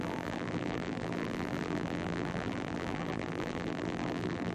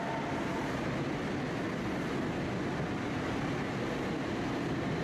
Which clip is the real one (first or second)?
second